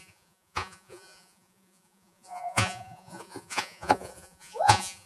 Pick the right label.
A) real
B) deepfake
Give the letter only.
B